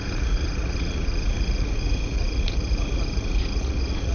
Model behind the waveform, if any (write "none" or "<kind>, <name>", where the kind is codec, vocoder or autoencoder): vocoder, Vocos